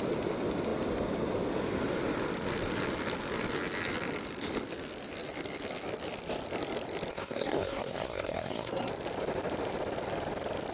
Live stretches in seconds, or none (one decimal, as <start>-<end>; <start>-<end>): 0.0-7.1; 8.9-10.7